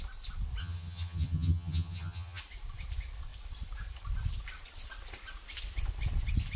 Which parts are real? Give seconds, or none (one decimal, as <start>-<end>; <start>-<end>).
0.0-0.6; 2.4-6.6